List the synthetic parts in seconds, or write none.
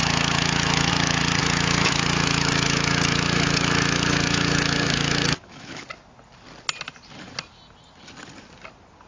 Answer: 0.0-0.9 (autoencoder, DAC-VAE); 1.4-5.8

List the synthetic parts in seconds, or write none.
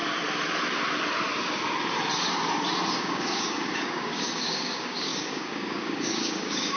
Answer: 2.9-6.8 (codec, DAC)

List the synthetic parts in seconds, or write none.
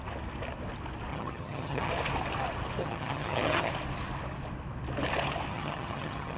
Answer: 1.1-1.9 (vocoder, HiFi-GAN); 2.8-3.7; 5.5-6.4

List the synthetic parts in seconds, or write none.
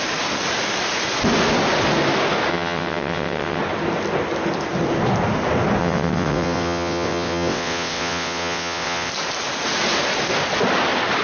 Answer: 2.5-3.6 (vocoder, WaveNeXt); 5.8-9.1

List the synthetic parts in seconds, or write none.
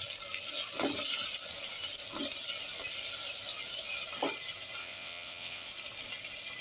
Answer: 4.8-5.7 (vocoder, WaveNeXt)